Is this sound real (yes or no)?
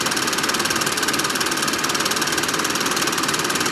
yes